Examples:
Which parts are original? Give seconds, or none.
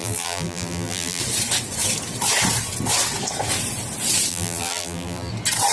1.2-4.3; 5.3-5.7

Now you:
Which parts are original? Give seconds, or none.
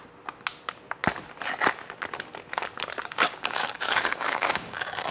0.0-3.0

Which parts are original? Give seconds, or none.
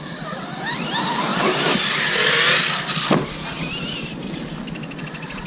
0.0-5.5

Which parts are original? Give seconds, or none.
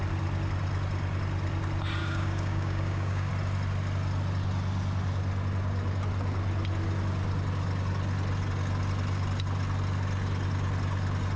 0.0-2.0; 3.3-11.4